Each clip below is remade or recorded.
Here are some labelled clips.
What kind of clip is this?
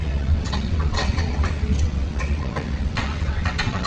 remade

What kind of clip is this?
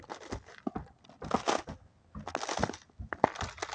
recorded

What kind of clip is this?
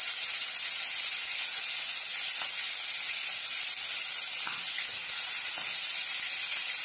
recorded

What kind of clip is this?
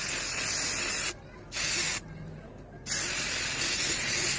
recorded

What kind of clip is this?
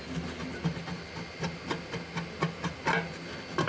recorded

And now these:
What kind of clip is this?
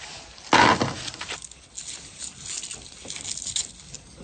recorded